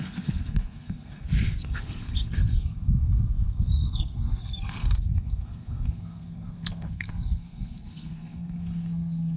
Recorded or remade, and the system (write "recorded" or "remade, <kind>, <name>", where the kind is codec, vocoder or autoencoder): remade, codec, SNAC